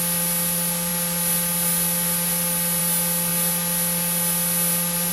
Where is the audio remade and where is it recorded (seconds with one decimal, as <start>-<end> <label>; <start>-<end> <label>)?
0.0-5.1 recorded